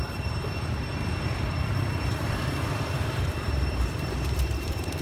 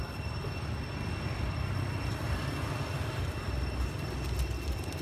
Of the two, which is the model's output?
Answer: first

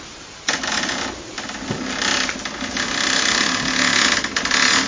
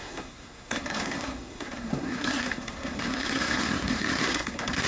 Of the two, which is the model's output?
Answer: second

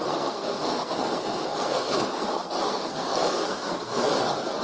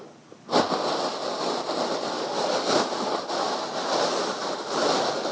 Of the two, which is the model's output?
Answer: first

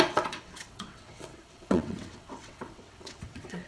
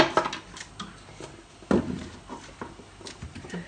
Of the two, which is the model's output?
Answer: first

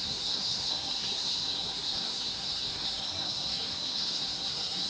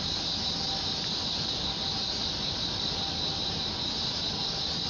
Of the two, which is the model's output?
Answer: first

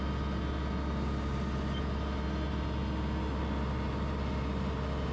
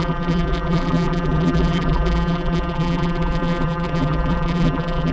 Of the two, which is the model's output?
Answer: second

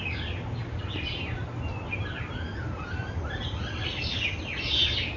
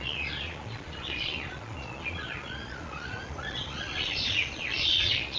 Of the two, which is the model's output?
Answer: second